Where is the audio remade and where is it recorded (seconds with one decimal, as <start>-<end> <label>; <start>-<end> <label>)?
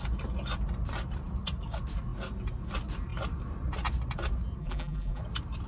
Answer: 0.0-4.6 recorded; 4.6-5.2 remade; 5.2-5.7 recorded